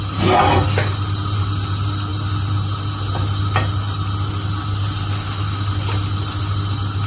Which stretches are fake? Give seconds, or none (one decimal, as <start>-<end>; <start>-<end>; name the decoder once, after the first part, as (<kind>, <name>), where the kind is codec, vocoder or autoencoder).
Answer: none